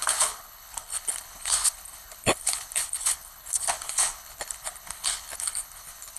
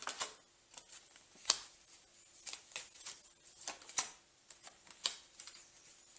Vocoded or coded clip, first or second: first